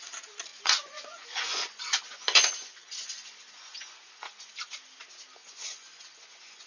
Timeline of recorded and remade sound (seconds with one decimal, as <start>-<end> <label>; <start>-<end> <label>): 0.0-0.5 recorded; 0.5-4.5 remade; 4.5-5.4 recorded; 5.4-6.7 remade